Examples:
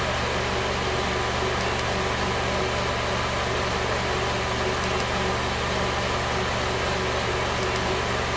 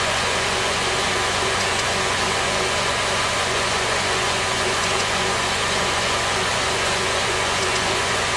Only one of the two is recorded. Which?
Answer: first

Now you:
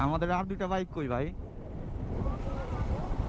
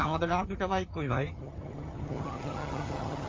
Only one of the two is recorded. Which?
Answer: first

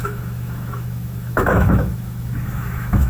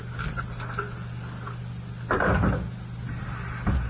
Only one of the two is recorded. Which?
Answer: second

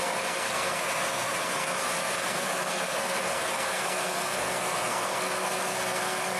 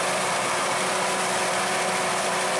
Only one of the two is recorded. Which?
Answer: second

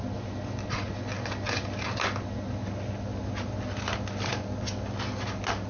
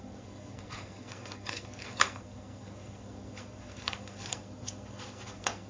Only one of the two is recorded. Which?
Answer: first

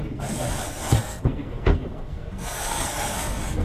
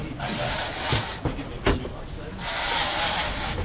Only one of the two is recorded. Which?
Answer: second